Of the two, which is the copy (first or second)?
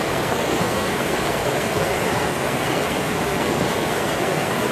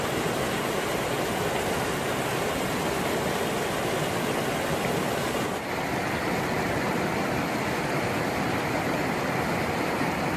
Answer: first